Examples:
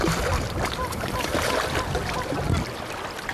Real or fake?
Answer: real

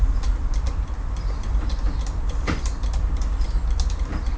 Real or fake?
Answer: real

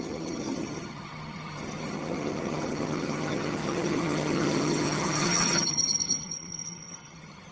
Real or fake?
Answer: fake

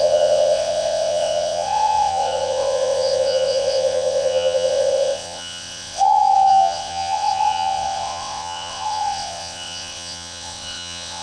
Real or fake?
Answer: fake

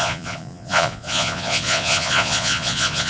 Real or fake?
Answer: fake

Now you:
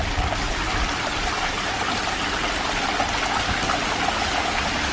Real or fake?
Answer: real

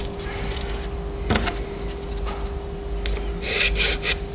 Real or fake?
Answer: real